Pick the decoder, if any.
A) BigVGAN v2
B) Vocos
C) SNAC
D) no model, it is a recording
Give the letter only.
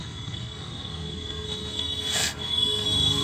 C